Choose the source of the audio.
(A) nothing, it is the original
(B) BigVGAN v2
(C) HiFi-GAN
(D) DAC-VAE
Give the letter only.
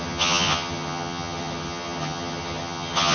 C